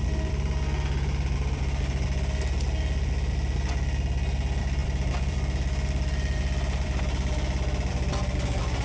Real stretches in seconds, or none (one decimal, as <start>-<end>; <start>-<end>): 0.0-8.8